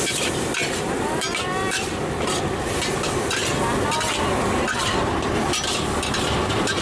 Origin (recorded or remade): recorded